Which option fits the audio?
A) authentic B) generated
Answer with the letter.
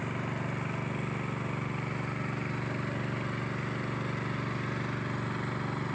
A